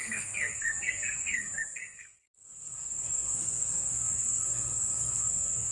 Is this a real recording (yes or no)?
no